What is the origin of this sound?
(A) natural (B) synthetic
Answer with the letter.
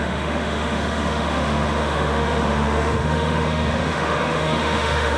B